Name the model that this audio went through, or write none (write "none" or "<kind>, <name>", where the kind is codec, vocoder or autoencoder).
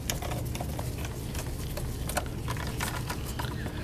none